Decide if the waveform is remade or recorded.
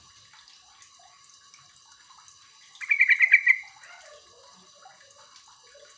recorded